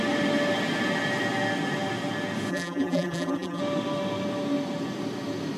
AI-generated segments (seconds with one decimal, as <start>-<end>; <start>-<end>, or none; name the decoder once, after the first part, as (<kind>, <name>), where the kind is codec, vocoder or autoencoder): 2.5-3.6 (vocoder, BigVGAN v2)